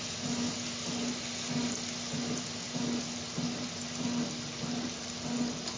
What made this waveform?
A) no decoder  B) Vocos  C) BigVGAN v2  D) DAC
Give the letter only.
A